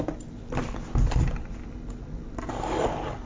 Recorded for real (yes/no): yes